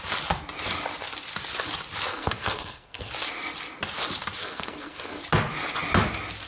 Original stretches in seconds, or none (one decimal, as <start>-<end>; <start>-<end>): 0.0-2.1; 3.1-4.4; 5.2-6.5